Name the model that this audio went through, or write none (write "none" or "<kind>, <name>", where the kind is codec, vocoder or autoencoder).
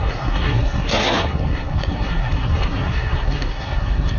codec, SNAC